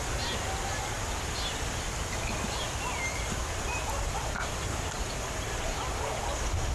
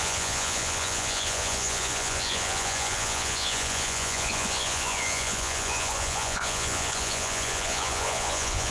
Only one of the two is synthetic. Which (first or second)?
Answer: second